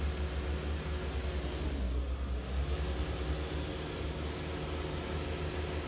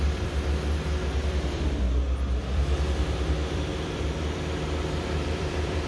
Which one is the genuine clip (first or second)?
first